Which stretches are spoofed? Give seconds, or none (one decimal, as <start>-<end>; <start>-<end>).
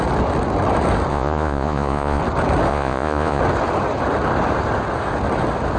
1.1-2.2; 2.7-3.4